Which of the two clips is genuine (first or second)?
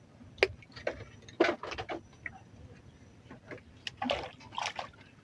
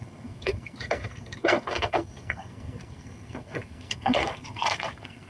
first